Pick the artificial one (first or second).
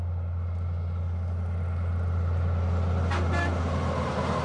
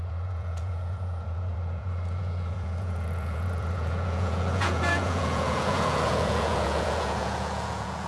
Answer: second